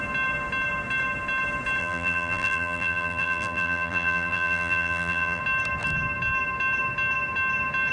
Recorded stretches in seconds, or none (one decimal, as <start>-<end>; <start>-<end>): 0.0-1.8; 5.4-7.9